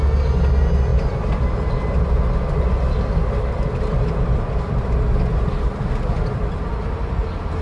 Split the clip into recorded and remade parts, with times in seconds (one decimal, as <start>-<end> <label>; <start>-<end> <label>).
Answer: 0.0-7.6 recorded